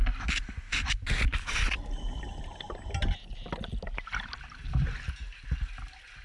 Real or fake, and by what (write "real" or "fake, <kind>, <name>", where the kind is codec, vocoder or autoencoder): real